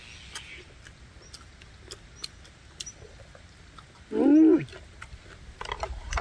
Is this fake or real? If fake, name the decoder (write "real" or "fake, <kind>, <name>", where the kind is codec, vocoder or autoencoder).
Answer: real